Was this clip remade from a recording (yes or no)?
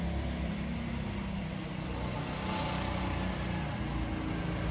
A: no